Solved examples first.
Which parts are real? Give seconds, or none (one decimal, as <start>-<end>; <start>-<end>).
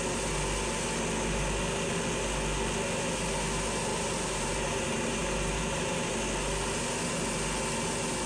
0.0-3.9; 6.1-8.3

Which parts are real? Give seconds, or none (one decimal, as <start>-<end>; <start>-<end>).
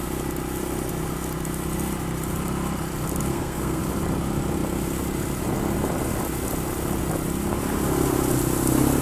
0.0-3.3; 3.8-9.0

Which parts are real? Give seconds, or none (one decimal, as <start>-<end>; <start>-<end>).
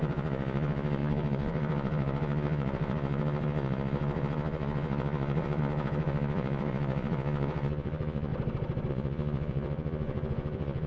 8.3-8.9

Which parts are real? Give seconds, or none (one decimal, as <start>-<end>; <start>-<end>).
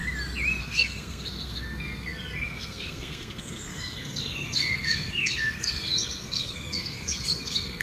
0.0-0.6